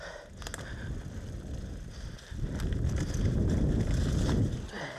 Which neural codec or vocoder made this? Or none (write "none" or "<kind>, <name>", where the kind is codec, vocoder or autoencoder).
none